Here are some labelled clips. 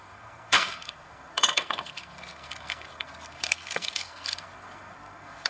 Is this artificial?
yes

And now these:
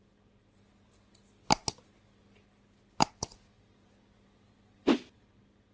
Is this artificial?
no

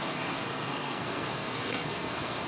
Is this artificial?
yes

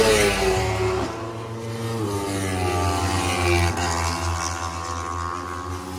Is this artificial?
no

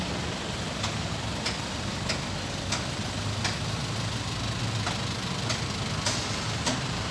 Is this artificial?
no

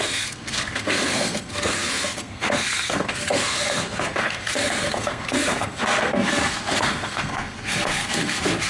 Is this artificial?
yes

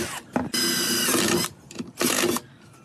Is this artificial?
no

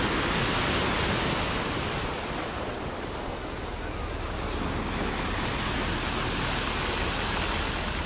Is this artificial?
no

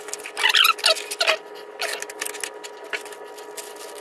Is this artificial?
no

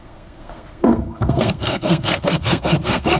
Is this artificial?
yes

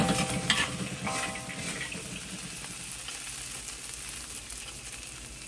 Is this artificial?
no